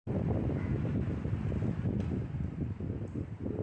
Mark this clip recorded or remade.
recorded